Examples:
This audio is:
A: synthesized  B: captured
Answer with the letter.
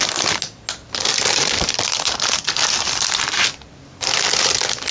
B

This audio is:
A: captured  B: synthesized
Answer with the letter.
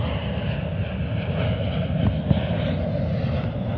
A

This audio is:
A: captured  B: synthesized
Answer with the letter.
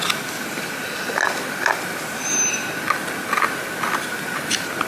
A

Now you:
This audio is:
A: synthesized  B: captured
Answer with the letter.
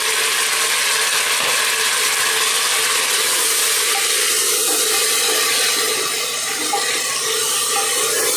B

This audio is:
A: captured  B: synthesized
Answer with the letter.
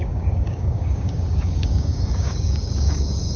B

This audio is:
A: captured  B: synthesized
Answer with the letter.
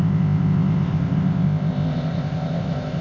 B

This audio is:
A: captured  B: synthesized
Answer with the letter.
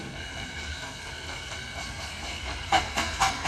B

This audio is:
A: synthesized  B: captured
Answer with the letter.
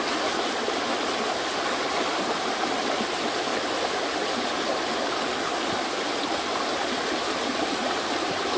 A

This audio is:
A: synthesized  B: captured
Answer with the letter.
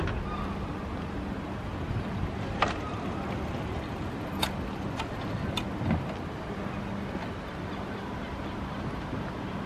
B